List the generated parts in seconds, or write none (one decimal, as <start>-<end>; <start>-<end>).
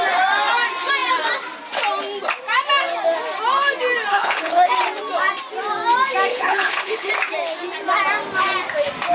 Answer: 4.1-4.7; 6.3-7.1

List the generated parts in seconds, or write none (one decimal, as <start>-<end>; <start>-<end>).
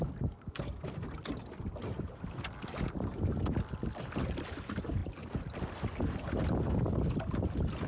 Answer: none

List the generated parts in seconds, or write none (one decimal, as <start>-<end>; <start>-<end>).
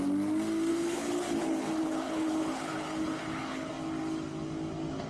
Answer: 0.7-3.7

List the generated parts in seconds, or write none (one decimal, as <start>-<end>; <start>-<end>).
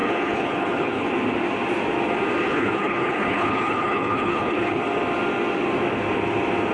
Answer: 0.0-1.1; 2.4-4.8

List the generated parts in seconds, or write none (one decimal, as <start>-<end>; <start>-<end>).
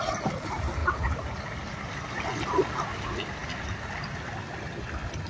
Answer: none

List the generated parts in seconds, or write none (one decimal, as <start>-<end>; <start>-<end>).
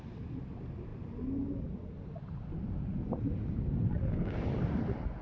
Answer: none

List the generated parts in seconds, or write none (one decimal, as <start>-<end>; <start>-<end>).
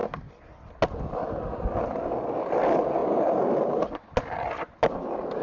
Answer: none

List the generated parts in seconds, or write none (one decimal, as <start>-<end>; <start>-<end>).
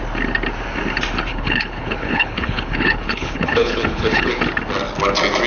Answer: 1.3-4.4